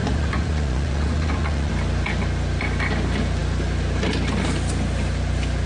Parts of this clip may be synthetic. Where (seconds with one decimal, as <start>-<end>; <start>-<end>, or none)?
0.0-1.7